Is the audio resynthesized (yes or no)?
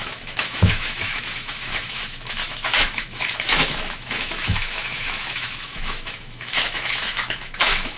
yes